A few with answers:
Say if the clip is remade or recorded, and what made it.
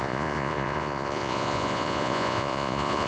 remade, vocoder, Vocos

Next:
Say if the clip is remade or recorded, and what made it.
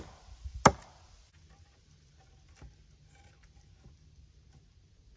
recorded